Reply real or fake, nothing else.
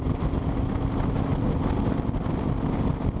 real